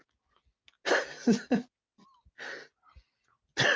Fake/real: real